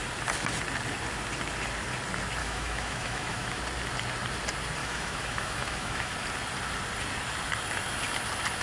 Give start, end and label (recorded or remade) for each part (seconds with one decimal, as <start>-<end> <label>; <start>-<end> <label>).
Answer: 0.0-2.4 recorded; 2.4-3.6 remade; 3.6-4.8 recorded; 4.8-6.1 remade; 6.1-8.6 recorded